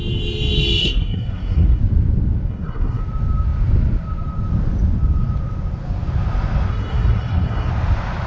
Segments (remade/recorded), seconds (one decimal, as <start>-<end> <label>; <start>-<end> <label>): 0.0-0.8 recorded; 0.8-1.8 remade; 1.8-2.5 recorded; 2.5-3.0 remade; 3.0-6.7 recorded; 6.7-7.7 remade; 7.7-8.3 recorded